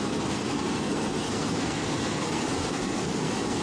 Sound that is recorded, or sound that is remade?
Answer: remade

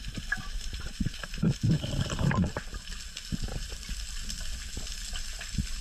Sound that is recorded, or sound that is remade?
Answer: recorded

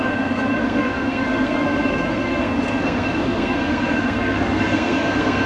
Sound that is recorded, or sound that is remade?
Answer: remade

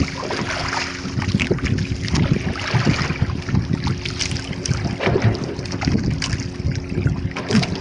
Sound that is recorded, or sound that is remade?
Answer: recorded